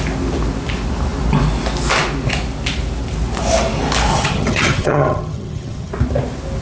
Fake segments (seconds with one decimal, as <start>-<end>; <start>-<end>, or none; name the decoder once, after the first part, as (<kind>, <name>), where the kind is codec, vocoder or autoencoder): 4.1-5.9 (vocoder, HiFi-GAN)